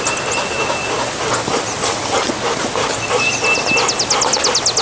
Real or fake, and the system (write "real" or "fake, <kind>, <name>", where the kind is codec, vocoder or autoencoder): real